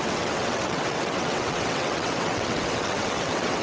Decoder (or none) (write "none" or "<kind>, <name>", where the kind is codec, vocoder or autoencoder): vocoder, WaveNeXt